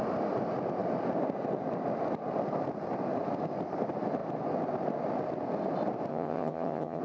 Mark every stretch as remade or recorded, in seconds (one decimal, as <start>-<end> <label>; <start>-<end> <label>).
0.0-6.1 recorded; 6.1-7.0 remade

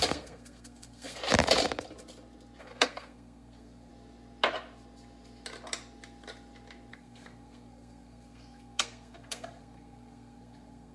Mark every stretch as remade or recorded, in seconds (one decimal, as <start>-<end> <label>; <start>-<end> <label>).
0.0-1.2 remade; 1.2-2.6 recorded; 2.6-3.9 remade; 3.9-6.9 recorded; 6.9-10.9 remade

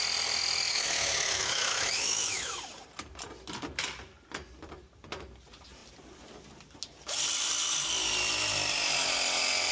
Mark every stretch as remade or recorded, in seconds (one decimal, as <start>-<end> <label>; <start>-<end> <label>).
0.0-0.7 recorded; 0.7-2.6 remade; 2.6-9.7 recorded

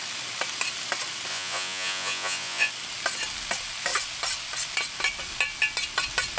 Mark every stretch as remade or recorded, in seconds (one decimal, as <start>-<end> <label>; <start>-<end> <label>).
0.0-1.3 recorded; 1.3-2.7 remade; 2.7-6.4 recorded

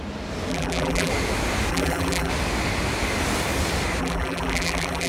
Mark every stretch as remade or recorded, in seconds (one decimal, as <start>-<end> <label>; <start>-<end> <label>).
0.0-0.5 recorded; 0.5-1.1 remade; 1.1-1.7 recorded; 1.7-2.3 remade; 2.3-4.0 recorded; 4.0-5.1 remade

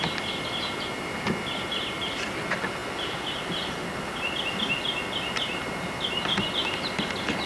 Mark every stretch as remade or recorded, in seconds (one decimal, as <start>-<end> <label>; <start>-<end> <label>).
0.0-7.5 recorded